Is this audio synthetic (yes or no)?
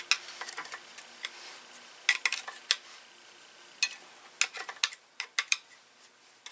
no